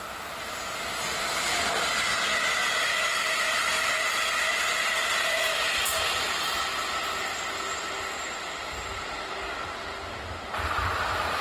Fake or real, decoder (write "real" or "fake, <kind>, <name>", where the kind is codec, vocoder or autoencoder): real